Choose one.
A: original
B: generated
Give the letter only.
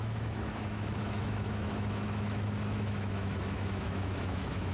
B